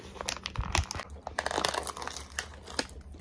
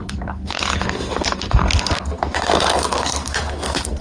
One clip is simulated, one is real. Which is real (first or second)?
first